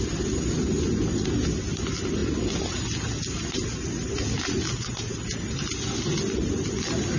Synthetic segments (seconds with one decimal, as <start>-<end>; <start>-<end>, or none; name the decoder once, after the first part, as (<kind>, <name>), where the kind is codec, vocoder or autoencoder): none